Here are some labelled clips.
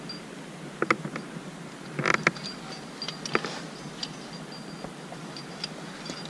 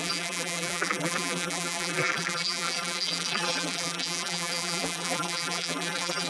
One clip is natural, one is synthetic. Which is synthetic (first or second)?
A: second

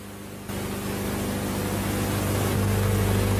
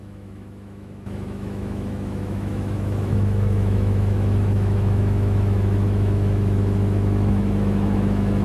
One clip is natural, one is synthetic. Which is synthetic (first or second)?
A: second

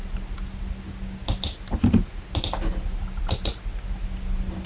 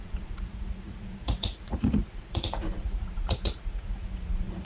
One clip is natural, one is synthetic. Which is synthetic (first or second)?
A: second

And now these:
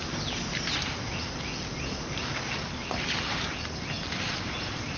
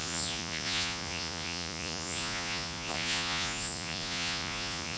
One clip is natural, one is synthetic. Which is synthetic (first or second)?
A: second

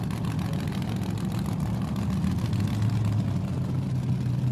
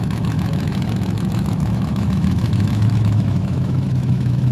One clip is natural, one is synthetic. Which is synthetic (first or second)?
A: second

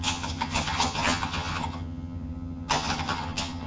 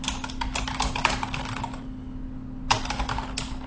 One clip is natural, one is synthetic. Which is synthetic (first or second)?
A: first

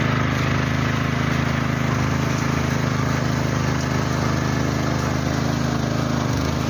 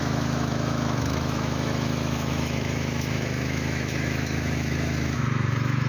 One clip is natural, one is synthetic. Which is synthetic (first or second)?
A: second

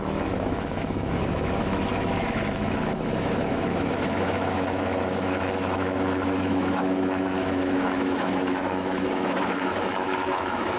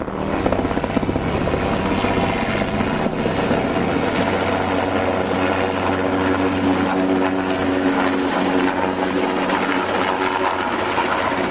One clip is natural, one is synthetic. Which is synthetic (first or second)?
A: first